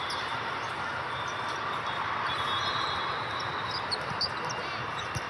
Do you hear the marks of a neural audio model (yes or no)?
no